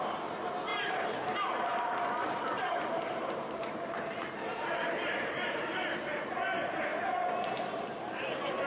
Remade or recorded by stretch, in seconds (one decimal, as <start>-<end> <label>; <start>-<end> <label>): 0.0-0.7 recorded; 0.7-1.2 remade; 1.2-1.7 recorded; 1.7-5.7 remade; 5.7-8.7 recorded